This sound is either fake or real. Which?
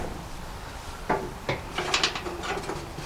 real